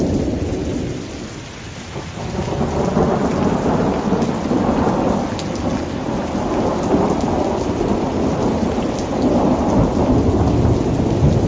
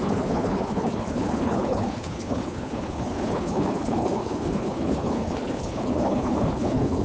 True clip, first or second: first